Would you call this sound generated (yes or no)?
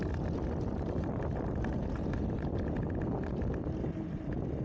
no